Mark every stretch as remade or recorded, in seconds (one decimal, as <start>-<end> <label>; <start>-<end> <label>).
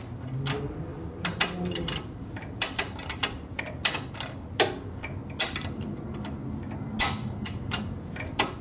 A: 0.0-0.9 recorded; 0.9-3.6 remade; 3.6-8.6 recorded